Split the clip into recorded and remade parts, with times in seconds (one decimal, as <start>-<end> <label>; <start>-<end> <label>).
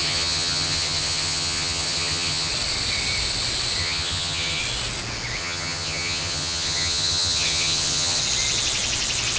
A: 0.0-2.5 remade; 2.5-3.8 recorded; 3.8-4.6 remade; 4.6-5.4 recorded; 5.4-8.2 remade; 8.2-9.4 recorded